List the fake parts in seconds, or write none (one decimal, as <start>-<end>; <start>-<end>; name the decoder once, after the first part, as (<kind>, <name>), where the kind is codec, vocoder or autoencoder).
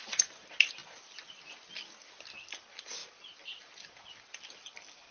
none